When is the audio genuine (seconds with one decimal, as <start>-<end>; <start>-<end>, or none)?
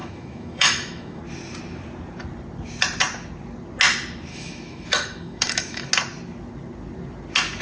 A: 1.2-4.3; 5.9-7.6